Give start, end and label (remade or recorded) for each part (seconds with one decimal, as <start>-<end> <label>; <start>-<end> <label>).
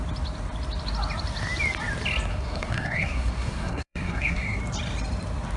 0.0-2.3 recorded; 2.3-4.6 remade; 4.6-5.6 recorded